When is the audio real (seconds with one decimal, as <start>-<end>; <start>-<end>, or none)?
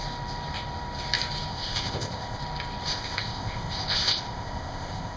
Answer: 0.0-1.5; 2.4-2.9